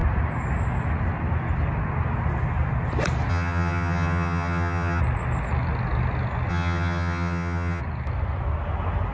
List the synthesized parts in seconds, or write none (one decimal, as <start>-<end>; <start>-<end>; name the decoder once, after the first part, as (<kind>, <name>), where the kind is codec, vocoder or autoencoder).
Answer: 3.3-5.0 (vocoder, HiFi-GAN); 6.5-7.8